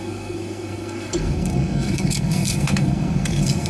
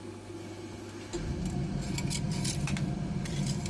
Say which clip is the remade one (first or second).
first